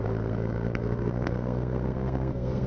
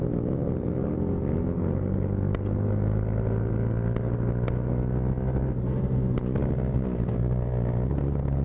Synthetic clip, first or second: first